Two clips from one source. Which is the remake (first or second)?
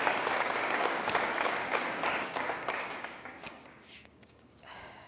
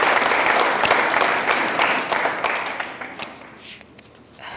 first